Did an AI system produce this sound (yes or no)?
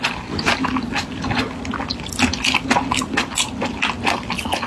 no